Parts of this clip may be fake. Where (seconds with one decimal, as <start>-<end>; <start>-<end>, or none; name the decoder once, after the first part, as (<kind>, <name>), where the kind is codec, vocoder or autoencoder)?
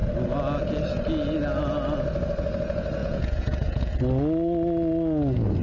3.0-3.9 (vocoder, Vocos)